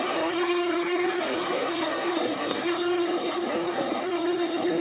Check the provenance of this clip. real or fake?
fake